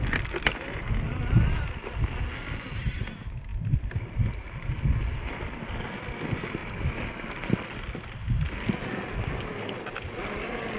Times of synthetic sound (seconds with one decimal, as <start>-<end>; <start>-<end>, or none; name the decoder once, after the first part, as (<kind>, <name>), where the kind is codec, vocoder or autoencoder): none